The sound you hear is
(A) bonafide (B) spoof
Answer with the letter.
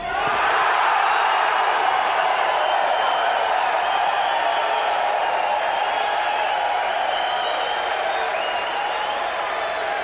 A